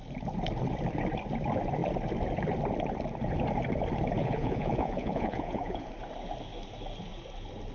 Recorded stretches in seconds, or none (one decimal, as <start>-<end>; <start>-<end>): 0.0-4.2; 5.9-7.7